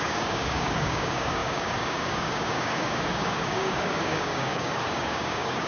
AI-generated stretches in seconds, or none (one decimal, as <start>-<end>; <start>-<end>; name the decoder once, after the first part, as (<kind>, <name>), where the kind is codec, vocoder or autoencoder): 0.0-5.7 (codec, DAC)